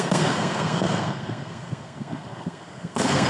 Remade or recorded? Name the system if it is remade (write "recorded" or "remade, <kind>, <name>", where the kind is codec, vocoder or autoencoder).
remade, codec, SNAC